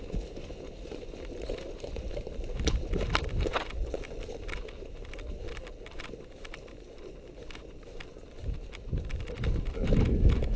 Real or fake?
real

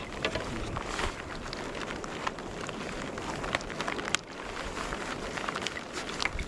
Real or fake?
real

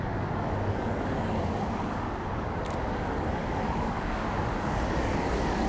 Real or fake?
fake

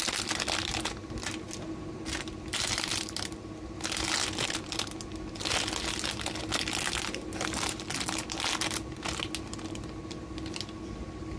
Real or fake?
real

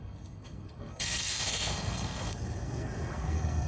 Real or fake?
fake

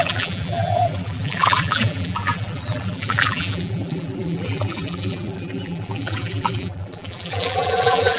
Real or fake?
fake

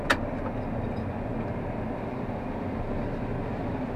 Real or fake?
real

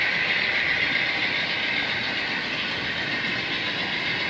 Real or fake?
real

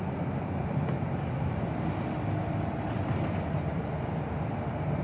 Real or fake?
fake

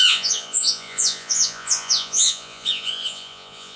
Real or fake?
fake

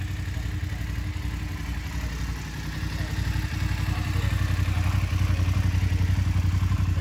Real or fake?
real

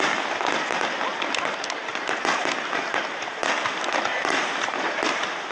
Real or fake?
real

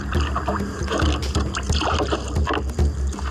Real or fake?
real